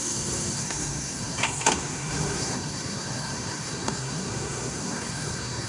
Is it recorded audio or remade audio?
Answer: remade